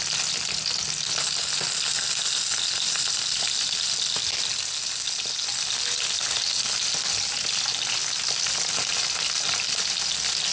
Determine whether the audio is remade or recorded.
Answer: recorded